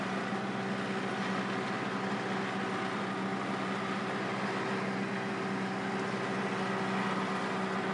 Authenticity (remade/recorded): recorded